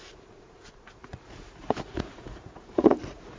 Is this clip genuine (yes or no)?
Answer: no